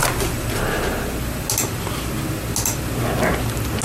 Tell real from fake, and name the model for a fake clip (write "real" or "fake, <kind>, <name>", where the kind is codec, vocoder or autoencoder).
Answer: real